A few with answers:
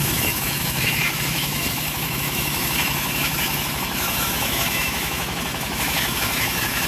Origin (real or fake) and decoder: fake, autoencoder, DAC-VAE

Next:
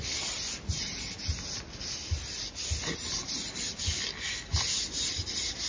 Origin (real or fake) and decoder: real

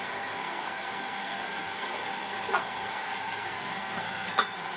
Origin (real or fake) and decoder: fake, codec, SNAC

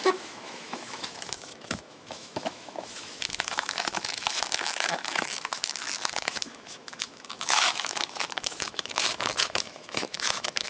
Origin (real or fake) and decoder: fake, autoencoder, DAC-VAE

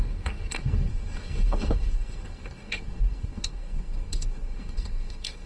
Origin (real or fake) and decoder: fake, codec, SNAC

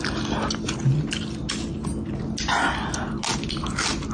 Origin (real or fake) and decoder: real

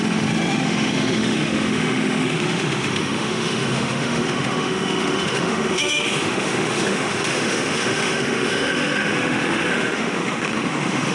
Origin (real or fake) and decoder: fake, autoencoder, DAC-VAE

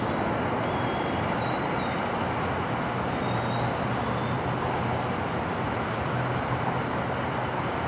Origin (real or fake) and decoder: real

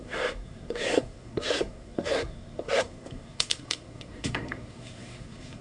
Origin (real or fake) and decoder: fake, codec, SNAC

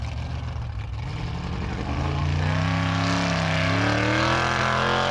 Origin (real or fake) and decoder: real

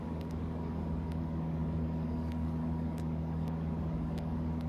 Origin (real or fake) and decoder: fake, codec, DAC